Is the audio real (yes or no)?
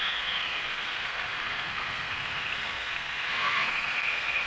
no